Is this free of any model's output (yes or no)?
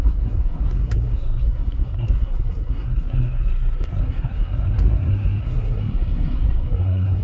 no